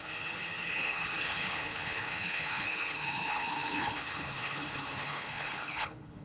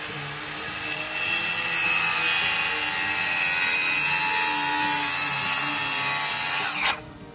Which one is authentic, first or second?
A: second